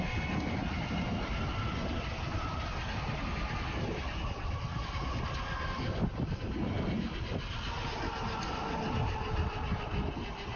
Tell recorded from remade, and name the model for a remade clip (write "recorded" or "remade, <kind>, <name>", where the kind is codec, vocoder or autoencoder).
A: recorded